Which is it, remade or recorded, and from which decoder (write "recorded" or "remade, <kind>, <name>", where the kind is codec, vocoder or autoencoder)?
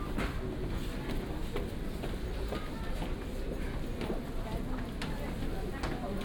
recorded